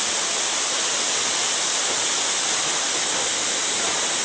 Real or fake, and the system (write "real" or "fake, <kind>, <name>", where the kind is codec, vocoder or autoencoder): real